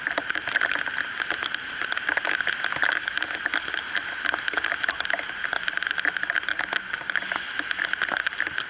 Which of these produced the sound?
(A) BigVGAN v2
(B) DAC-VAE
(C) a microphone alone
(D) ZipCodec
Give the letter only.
C